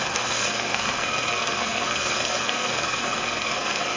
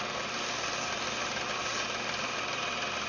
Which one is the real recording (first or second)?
second